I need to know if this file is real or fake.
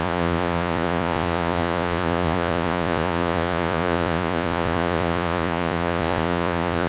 fake